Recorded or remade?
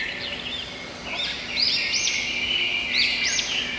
recorded